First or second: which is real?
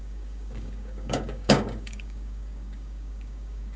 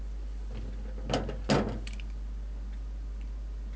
second